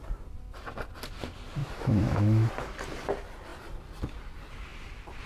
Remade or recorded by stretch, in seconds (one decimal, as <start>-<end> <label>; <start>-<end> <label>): 0.0-1.6 recorded; 1.6-2.5 remade; 2.5-5.3 recorded

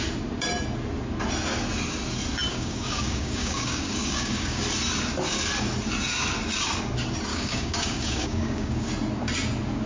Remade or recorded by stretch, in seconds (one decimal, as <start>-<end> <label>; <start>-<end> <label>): 0.0-2.5 recorded; 2.5-4.6 remade; 4.6-7.3 recorded; 7.3-8.9 remade; 8.9-9.9 recorded

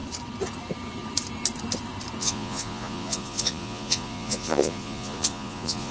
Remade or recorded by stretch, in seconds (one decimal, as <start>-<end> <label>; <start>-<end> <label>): 0.0-2.2 recorded; 2.2-5.9 remade

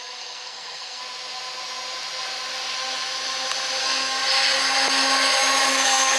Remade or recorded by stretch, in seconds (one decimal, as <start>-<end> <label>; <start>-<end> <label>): 0.0-1.0 remade; 1.0-3.8 recorded; 3.8-4.2 remade; 4.2-5.7 recorded; 5.7-6.2 remade

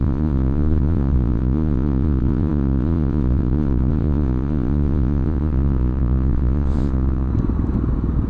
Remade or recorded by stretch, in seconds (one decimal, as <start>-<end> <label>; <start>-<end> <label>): 0.0-7.3 remade; 7.3-8.3 recorded

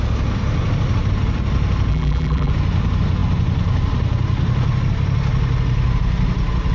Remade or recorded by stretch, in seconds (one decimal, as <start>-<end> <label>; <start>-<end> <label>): 0.0-1.9 recorded; 1.9-2.5 remade; 2.5-6.7 recorded

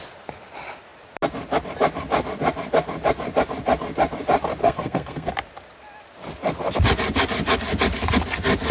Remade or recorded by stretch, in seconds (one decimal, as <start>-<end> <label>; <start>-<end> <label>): 0.0-4.6 recorded; 4.6-5.3 remade; 5.3-8.7 recorded

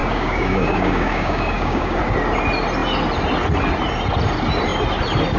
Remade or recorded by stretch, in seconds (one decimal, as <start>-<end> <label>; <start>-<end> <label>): 0.0-2.0 remade; 2.0-5.4 recorded